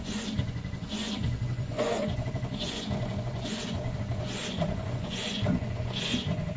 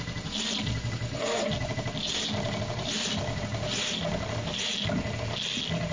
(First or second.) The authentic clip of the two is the second